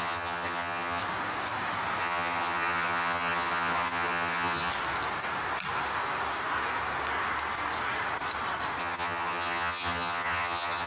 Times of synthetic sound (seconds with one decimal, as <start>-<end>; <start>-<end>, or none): 0.0-1.0; 2.0-4.7; 8.8-10.9